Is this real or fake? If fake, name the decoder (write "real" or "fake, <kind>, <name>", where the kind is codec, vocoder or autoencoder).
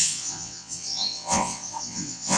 fake, vocoder, WaveNeXt